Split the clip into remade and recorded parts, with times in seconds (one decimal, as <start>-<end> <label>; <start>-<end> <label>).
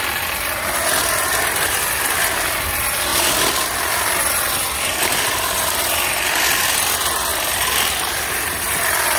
0.0-9.2 recorded